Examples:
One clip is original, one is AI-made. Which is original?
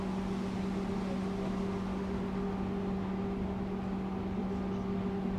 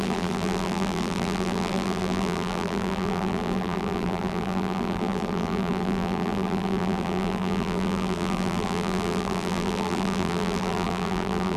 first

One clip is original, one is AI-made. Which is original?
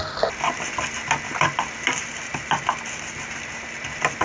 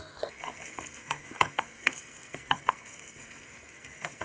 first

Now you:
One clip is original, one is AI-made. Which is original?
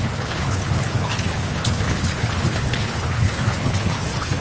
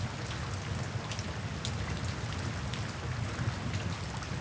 second